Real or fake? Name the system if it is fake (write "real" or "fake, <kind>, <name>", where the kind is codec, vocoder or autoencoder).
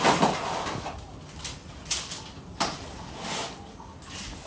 real